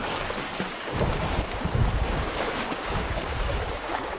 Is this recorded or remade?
remade